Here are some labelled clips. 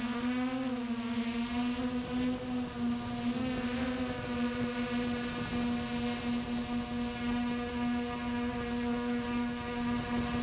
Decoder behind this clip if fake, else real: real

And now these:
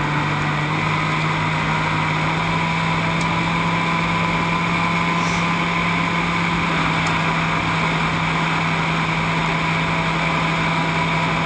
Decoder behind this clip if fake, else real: real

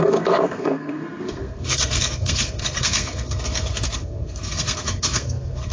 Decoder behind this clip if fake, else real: fake, codec, SNAC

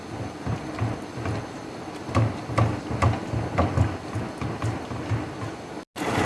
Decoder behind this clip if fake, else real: real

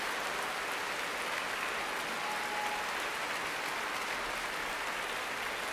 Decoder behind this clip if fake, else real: real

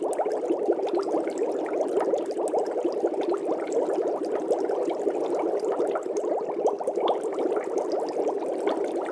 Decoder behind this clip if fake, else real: real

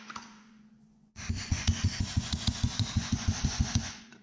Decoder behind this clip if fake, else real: fake, vocoder, Vocos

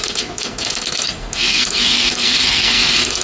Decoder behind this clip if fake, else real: fake, codec, SNAC